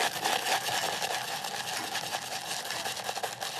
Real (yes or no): yes